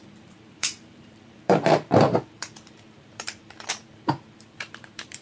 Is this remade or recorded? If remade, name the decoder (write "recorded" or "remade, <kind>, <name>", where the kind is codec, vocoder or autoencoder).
remade, vocoder, BigVGAN v2